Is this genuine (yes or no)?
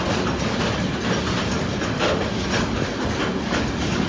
yes